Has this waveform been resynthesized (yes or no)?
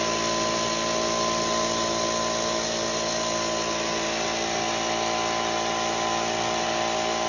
no